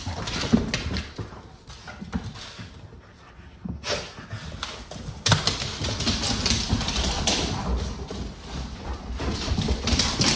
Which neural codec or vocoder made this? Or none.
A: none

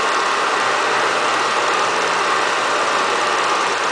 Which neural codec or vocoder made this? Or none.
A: none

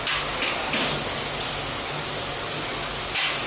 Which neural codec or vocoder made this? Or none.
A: none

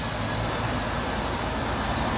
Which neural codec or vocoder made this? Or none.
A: none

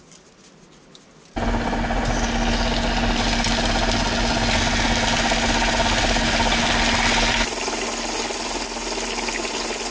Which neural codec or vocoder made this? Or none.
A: none